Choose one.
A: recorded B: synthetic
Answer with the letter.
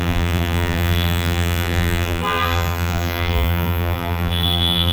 B